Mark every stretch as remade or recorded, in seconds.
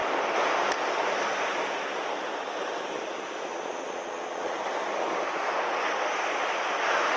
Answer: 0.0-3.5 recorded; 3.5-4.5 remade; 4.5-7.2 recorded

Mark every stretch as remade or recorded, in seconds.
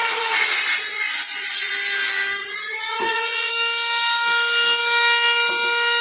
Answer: 0.0-1.7 remade; 1.7-2.4 recorded; 2.4-3.5 remade; 3.5-6.0 recorded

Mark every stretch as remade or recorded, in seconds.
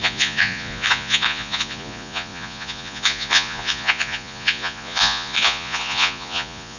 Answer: 0.0-6.8 remade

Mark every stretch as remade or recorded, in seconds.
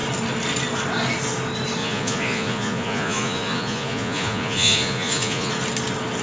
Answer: 0.0-1.8 recorded; 1.8-5.5 remade; 5.5-6.2 recorded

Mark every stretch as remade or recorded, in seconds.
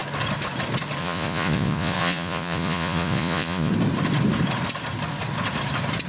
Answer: 0.0-1.0 recorded; 1.0-3.7 remade; 3.7-6.1 recorded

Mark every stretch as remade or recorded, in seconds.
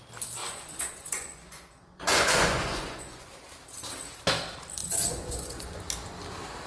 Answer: 0.0-0.4 recorded; 0.4-3.3 remade; 3.3-4.8 recorded; 4.8-5.8 remade; 5.8-6.7 recorded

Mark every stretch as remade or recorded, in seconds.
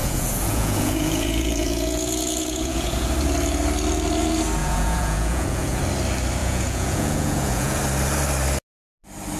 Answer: 0.0-3.1 remade; 3.1-4.6 recorded; 4.6-5.8 remade; 5.8-6.4 recorded; 6.4-7.8 remade; 7.8-9.4 recorded